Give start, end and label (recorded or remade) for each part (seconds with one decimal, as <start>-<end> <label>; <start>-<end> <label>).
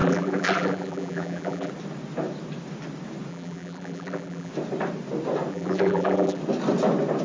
0.0-1.7 remade; 1.7-3.3 recorded; 3.3-4.5 remade; 4.5-5.5 recorded; 5.5-6.4 remade; 6.4-7.2 recorded